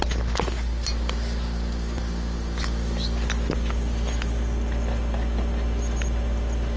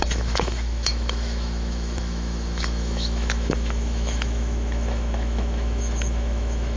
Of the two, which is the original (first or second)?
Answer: first